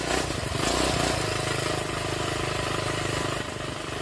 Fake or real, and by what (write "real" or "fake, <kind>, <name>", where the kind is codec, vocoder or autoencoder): real